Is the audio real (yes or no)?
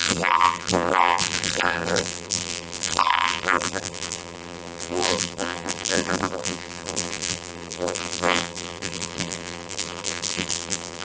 no